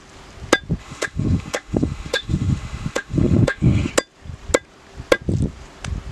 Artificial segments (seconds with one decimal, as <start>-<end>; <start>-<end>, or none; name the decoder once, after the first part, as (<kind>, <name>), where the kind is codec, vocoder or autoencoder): 0.8-3.9 (autoencoder, DAC-VAE)